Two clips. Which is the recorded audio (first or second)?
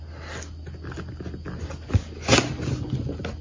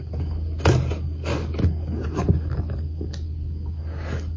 first